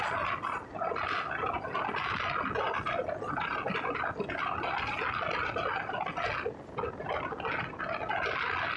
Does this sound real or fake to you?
real